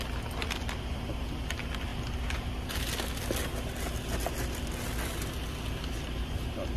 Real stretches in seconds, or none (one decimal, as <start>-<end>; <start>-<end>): 0.0-6.8